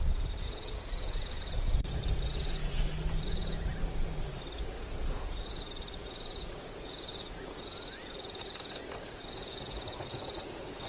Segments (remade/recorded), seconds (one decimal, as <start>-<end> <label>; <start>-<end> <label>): 0.0-3.7 remade; 3.7-4.9 recorded; 4.9-10.9 remade